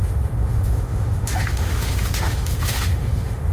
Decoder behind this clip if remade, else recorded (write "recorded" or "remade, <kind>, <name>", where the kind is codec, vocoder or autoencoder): remade, autoencoder, DAC-VAE